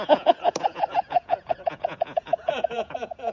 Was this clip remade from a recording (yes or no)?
yes